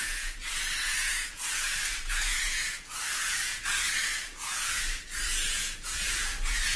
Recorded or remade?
remade